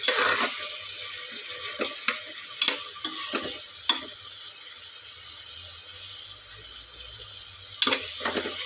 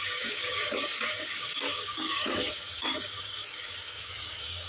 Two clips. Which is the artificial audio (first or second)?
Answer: second